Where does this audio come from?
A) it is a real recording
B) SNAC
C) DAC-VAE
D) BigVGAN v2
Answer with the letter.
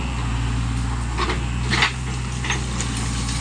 A